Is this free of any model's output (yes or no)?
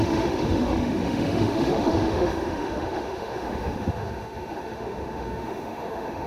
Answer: no